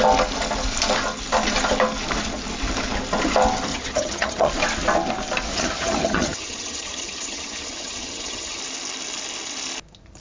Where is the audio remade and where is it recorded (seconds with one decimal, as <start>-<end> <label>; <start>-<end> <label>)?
0.0-3.7 recorded; 3.7-4.5 remade; 4.5-5.5 recorded; 5.5-8.6 remade; 8.6-10.2 recorded